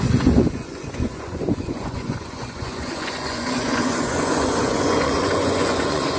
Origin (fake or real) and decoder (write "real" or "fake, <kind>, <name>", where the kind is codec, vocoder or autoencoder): fake, vocoder, Vocos